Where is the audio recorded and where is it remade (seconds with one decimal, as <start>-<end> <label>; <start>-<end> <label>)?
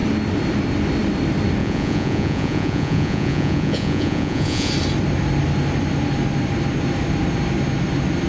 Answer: 0.0-1.6 recorded; 1.6-4.7 remade; 4.7-8.3 recorded